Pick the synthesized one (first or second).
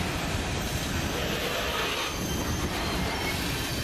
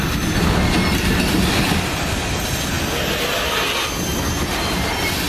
first